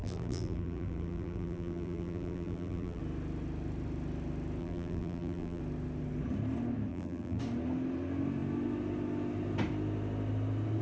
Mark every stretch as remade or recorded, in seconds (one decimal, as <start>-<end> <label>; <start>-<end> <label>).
0.0-3.0 remade; 3.0-4.6 recorded; 4.6-5.6 remade; 5.6-6.9 recorded; 6.9-7.4 remade; 7.4-10.8 recorded